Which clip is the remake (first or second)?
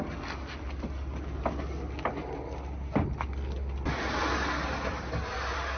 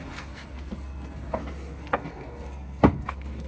second